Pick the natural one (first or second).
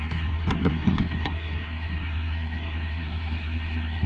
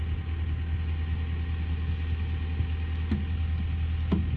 second